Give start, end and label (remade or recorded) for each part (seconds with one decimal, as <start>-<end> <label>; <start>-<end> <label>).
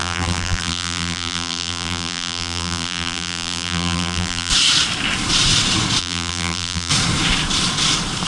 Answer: 0.0-4.5 remade; 4.5-6.0 recorded; 6.0-6.9 remade; 6.9-8.3 recorded